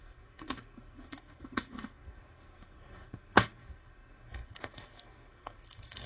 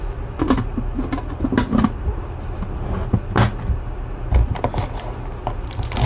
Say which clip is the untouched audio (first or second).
second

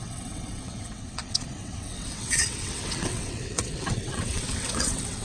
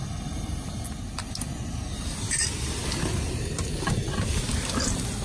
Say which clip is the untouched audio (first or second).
second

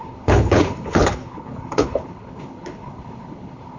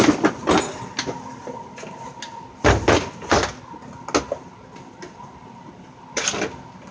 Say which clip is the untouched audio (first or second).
second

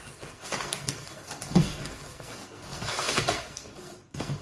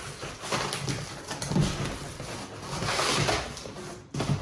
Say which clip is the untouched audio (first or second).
second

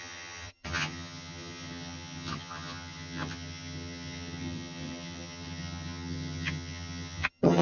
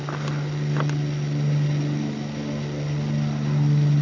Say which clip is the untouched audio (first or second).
second